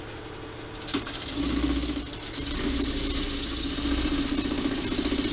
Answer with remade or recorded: recorded